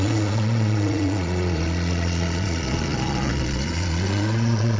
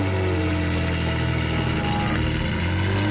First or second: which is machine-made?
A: first